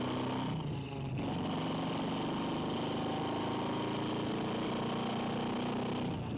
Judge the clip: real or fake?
real